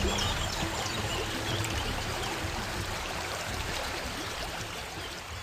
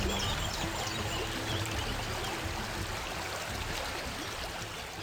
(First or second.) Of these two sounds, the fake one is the first